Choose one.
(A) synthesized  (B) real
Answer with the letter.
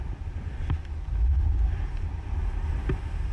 B